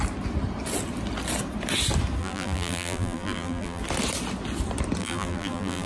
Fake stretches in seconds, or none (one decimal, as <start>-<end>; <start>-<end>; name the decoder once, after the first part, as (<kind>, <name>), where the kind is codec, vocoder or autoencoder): 2.2-3.8 (vocoder, BigVGAN v2); 5.0-5.9